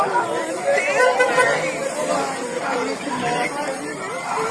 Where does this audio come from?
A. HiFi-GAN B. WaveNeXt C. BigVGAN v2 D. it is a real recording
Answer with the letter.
D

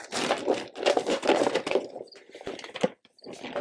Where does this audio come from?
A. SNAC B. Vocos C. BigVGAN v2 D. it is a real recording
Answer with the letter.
D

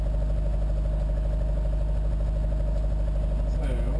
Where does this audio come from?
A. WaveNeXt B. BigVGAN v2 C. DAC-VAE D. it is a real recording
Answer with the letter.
D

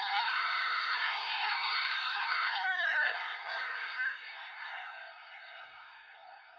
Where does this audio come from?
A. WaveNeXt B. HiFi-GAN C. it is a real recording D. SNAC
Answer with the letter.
D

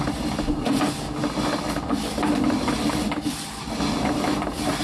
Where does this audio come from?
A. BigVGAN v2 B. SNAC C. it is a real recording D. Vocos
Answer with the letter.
C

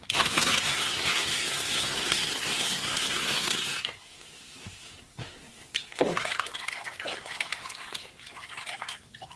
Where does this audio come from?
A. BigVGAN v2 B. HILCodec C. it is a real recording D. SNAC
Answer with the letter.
D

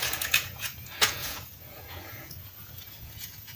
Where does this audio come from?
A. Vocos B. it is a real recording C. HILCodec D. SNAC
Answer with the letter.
A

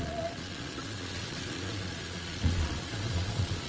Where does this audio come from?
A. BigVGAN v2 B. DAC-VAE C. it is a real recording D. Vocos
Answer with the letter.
D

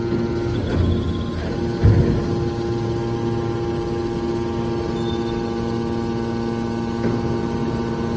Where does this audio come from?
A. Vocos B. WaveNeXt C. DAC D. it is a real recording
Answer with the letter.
D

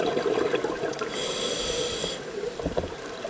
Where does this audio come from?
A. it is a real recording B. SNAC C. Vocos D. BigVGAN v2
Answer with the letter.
A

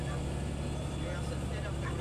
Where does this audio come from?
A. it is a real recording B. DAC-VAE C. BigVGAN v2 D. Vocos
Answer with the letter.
A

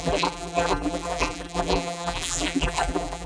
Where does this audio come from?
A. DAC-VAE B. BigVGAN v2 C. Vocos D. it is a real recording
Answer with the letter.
B